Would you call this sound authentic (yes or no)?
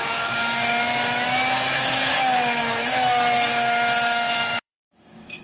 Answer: no